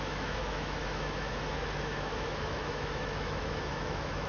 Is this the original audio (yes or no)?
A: no